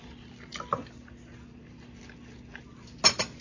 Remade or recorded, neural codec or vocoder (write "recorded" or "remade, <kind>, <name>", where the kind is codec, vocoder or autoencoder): recorded